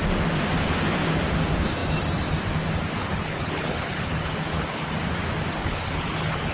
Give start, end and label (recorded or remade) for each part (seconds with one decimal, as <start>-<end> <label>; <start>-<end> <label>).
0.0-3.0 recorded; 3.0-4.9 remade; 4.9-5.6 recorded; 5.6-6.5 remade